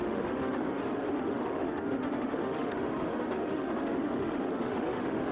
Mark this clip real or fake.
fake